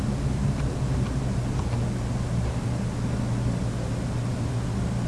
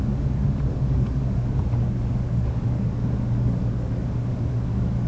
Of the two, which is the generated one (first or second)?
second